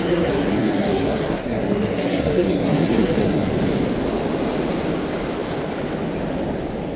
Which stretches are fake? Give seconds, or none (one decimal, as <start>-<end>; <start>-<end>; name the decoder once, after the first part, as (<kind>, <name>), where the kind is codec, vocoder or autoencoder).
0.0-3.5 (codec, SNAC)